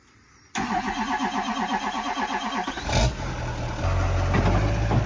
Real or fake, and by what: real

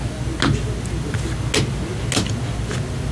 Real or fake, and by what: real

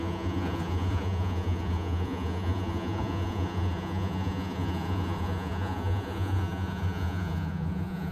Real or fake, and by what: fake, vocoder, Vocos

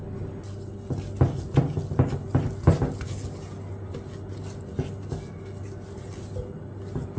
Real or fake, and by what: real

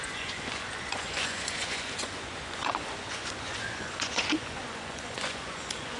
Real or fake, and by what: fake, vocoder, Vocos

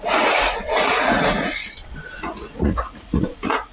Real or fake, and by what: fake, vocoder, Vocos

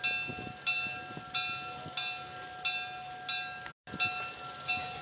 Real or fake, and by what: real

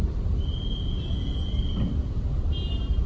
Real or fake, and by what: real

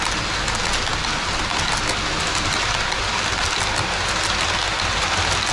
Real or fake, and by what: real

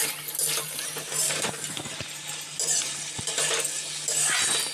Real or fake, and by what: real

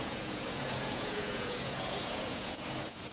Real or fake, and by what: fake, vocoder, Vocos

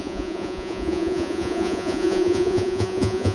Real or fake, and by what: fake, vocoder, Vocos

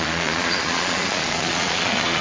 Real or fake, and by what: fake, vocoder, Vocos